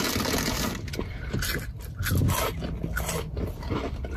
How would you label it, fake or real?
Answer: real